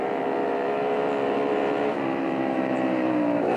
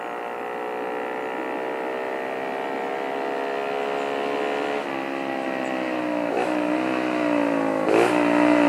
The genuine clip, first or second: second